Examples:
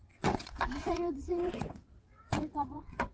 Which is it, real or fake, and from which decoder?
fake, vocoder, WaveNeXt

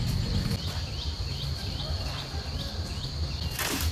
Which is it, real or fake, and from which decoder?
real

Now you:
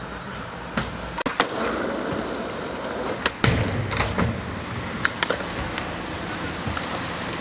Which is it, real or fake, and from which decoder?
real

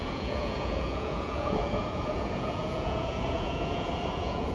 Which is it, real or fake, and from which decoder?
fake, vocoder, Vocos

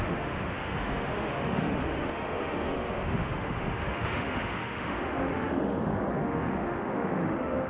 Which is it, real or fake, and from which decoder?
fake, autoencoder, DAC-VAE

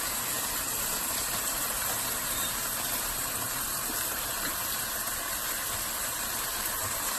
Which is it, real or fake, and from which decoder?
fake, vocoder, BigVGAN v2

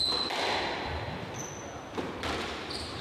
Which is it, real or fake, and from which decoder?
real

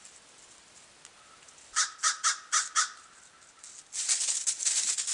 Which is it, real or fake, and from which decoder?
real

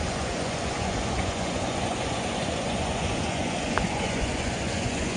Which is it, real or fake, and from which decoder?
fake, vocoder, Vocos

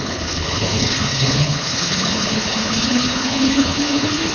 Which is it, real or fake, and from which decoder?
fake, codec, HILCodec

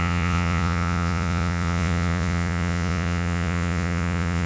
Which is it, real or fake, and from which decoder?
fake, vocoder, Vocos